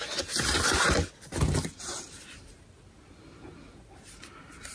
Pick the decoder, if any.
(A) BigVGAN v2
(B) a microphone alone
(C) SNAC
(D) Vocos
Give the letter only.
B